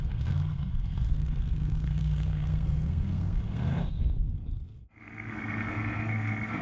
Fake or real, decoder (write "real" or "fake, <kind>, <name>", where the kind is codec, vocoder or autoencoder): fake, codec, SNAC